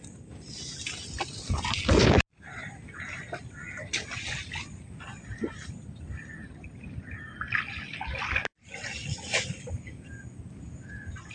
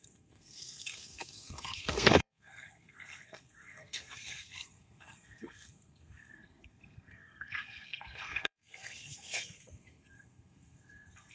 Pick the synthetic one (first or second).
second